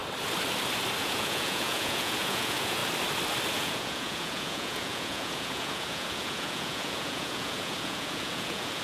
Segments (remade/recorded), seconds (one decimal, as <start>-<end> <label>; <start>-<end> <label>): 0.0-1.0 recorded; 1.0-2.8 remade; 2.8-3.5 recorded; 3.5-8.8 remade